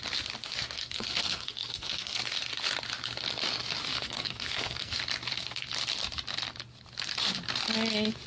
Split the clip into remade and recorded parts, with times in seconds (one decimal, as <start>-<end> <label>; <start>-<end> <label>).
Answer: 0.0-0.4 recorded; 0.4-2.2 remade; 2.2-3.9 recorded; 3.9-5.0 remade; 5.0-8.3 recorded